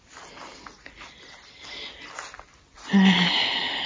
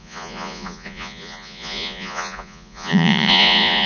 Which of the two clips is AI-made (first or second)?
second